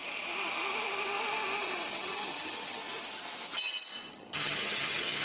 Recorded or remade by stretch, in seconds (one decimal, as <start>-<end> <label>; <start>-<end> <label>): 0.0-1.9 recorded; 1.9-2.8 remade; 2.8-4.1 recorded; 4.1-5.2 remade

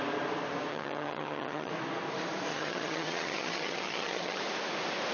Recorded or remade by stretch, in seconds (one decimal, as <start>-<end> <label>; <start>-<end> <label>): 0.0-0.7 recorded; 0.7-1.7 remade; 1.7-2.5 recorded; 2.5-4.4 remade; 4.4-5.1 recorded

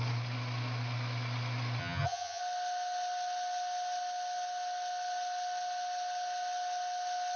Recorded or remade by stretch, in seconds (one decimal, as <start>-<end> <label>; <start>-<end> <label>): 0.0-1.8 recorded; 1.8-2.4 remade; 2.4-7.4 recorded